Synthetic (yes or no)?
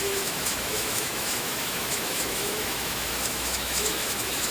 yes